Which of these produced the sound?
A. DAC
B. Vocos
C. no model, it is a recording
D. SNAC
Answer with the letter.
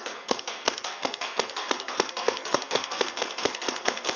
D